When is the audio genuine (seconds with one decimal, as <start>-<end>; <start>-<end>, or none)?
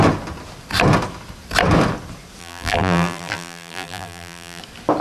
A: 0.0-2.4; 4.6-5.0